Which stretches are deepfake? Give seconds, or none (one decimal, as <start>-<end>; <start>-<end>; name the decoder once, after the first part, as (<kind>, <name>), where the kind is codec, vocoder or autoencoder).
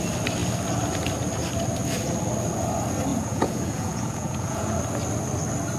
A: 3.1-4.8 (vocoder, Vocos)